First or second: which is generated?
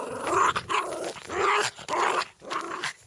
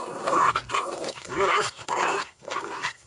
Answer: second